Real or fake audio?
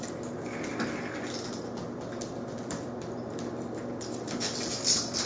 real